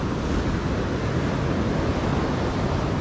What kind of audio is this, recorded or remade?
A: recorded